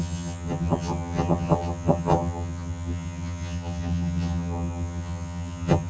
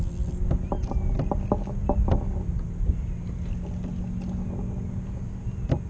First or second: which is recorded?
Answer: second